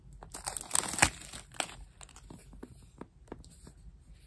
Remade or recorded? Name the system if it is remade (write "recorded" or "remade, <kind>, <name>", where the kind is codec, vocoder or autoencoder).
recorded